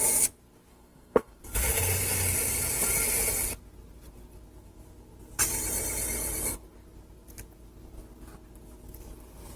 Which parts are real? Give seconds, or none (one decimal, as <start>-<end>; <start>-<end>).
0.0-0.7; 1.4-9.6